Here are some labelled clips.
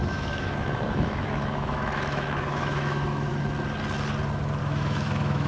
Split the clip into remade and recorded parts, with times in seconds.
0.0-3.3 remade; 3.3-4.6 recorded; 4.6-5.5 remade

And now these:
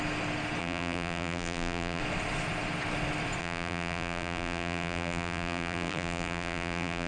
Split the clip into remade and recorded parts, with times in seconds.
0.0-0.6 recorded; 0.6-2.0 remade; 2.0-3.4 recorded; 3.4-7.1 remade

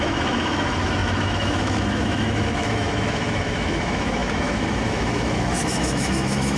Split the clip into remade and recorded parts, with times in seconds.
0.0-6.6 remade